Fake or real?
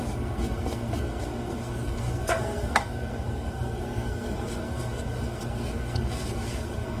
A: fake